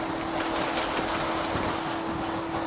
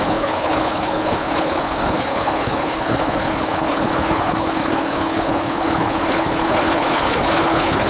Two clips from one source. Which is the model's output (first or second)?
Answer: second